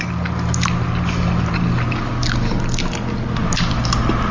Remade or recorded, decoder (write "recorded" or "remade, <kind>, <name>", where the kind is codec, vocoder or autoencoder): recorded